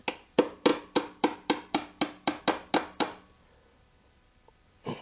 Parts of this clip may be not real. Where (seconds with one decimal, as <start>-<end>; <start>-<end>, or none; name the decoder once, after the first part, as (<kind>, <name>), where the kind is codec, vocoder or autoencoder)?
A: none